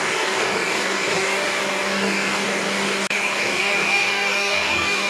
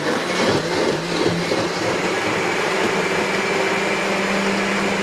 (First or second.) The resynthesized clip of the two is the first